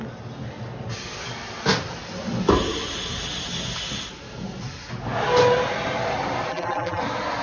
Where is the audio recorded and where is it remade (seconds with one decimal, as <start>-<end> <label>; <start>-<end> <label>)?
0.0-6.5 recorded; 6.5-7.0 remade; 7.0-7.4 recorded